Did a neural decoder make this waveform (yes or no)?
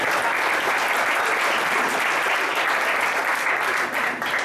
no